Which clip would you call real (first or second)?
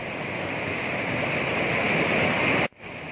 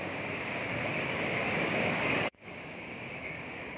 first